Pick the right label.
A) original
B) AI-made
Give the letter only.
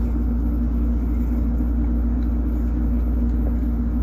A